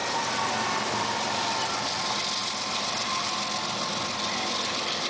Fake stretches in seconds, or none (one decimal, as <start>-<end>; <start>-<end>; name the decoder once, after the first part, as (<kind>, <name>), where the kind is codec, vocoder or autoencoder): none